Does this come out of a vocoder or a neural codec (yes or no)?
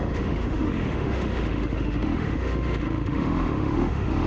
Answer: yes